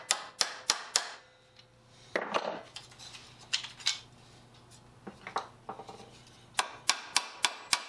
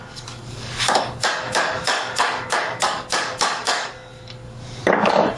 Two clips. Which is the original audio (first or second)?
first